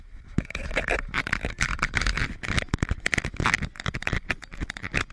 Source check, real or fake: real